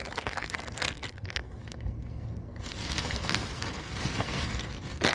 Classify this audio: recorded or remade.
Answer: remade